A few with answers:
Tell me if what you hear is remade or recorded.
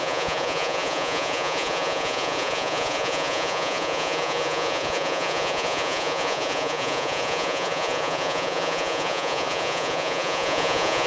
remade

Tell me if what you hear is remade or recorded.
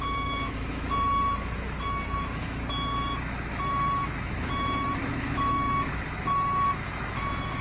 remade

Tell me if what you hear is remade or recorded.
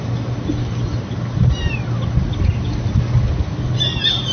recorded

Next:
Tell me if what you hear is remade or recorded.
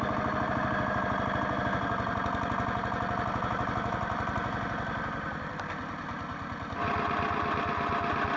recorded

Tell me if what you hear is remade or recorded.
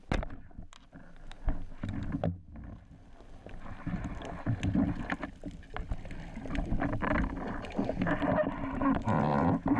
recorded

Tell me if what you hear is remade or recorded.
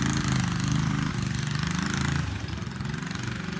recorded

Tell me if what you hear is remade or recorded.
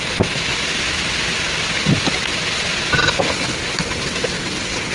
recorded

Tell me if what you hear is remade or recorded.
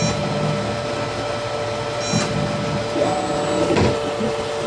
recorded